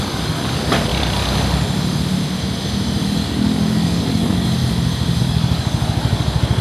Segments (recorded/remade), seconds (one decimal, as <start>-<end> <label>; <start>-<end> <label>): 0.0-0.9 remade; 0.9-3.0 recorded; 3.0-4.6 remade; 4.6-5.2 recorded; 5.2-6.6 remade

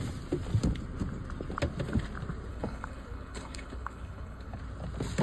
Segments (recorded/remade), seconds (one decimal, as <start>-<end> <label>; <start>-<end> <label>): 0.0-2.5 recorded; 2.5-4.6 remade; 4.6-5.2 recorded